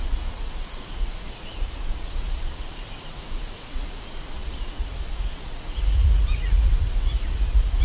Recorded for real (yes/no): no